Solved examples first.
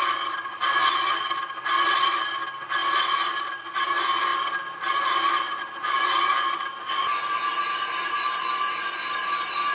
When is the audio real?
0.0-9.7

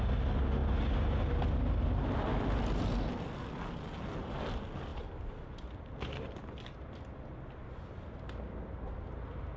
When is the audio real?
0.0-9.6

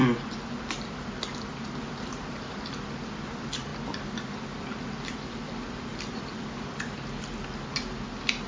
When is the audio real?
0.0-8.5